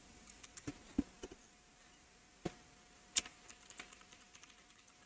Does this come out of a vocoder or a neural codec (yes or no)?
no